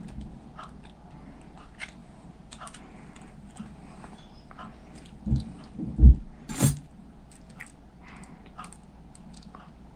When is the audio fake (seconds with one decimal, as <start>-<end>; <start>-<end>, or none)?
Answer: 2.0-3.6